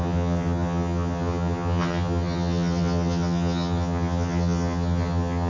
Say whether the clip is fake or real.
fake